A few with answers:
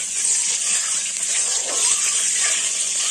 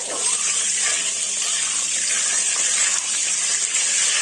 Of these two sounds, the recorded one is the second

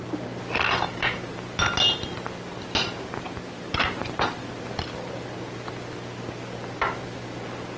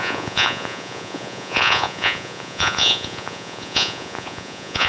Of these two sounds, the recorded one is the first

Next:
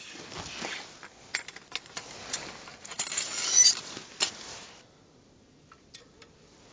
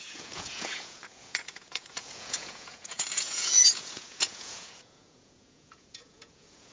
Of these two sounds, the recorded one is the first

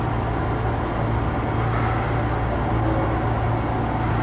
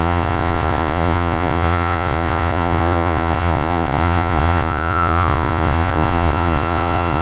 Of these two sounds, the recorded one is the first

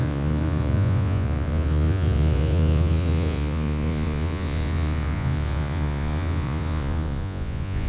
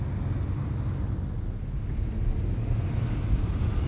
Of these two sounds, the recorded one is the second